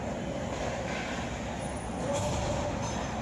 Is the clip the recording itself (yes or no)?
yes